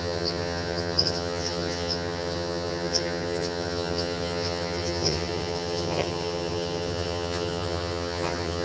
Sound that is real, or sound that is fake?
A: fake